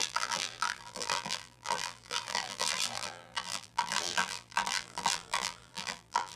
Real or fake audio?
fake